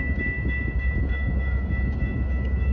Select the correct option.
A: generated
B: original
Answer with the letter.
A